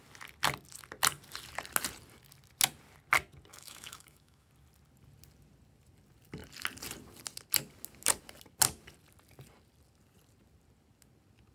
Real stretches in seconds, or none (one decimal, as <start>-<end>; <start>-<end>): 0.0-3.5; 4.5-11.5